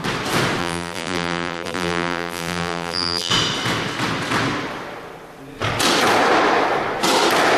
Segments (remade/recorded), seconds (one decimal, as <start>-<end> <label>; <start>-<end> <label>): 0.0-0.6 recorded; 0.6-3.3 remade; 3.3-7.6 recorded